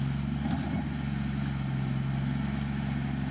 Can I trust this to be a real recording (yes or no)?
yes